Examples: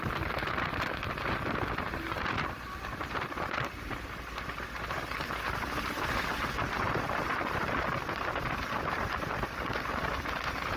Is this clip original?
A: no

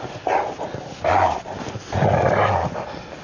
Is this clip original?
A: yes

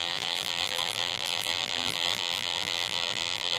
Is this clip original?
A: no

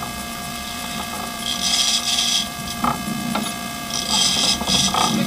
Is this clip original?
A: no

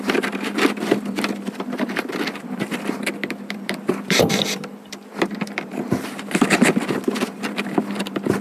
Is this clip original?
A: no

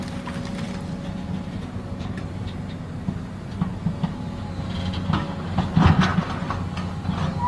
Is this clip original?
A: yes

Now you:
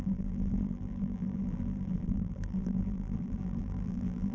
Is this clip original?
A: no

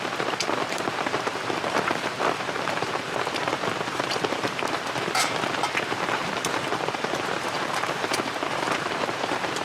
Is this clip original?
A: no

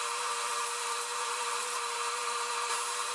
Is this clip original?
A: no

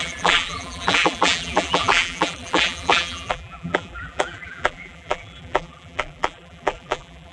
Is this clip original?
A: no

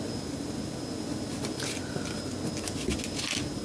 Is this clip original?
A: yes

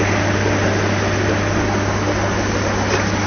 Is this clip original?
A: no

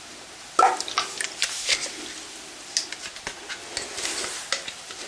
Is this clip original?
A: yes